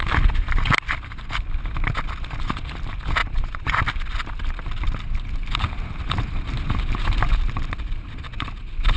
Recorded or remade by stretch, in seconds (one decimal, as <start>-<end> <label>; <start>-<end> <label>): 0.0-3.2 recorded; 3.2-3.8 remade; 3.8-9.0 recorded